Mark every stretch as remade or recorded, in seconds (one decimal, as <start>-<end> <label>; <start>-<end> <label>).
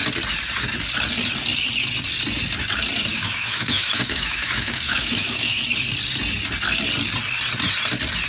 0.0-3.1 recorded; 3.1-5.6 remade; 5.6-8.3 recorded